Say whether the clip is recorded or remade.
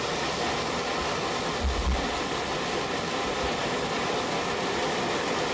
remade